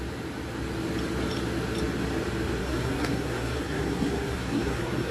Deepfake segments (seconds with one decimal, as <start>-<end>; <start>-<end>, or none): 2.6-5.1